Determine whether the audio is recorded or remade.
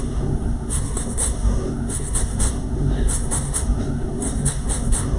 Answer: remade